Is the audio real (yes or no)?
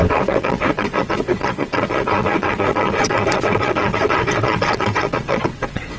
no